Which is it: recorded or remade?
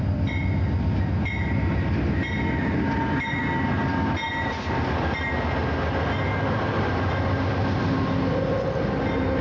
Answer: recorded